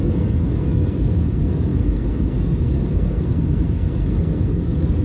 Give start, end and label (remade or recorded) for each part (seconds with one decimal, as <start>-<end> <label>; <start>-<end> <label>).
0.0-5.0 remade